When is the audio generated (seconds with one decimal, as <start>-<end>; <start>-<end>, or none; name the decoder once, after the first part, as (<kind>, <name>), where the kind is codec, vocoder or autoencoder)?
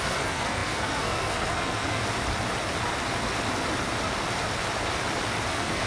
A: 0.0-2.0 (codec, SNAC); 5.5-5.9